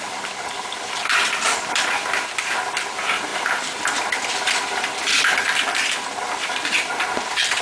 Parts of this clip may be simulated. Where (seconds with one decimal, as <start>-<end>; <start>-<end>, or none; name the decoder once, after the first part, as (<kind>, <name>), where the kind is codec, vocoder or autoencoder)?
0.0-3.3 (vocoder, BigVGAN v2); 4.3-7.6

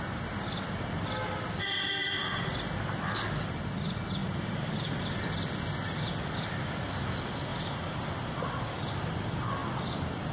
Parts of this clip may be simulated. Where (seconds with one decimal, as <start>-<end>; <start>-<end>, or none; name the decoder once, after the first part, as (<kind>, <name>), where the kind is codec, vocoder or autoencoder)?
4.2-5.0 (vocoder, BigVGAN v2); 7.5-8.1

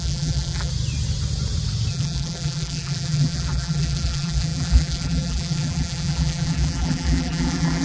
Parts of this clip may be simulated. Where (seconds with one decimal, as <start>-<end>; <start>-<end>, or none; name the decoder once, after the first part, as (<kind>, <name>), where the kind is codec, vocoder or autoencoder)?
0.0-0.7 (vocoder, BigVGAN v2); 1.9-7.8